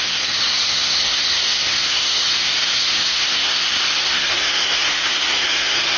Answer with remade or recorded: remade